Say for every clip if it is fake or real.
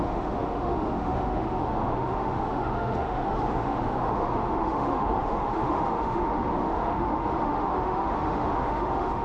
fake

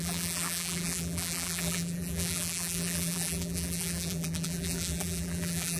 fake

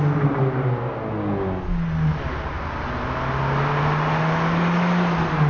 real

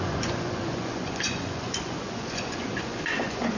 fake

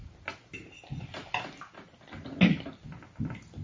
real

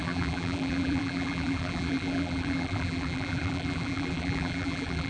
fake